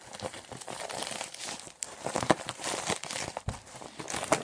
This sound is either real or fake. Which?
real